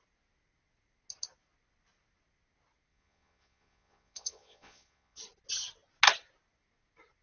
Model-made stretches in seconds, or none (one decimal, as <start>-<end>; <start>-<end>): 2.9-5.2